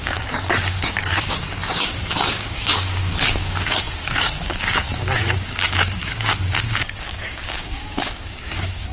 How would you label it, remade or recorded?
remade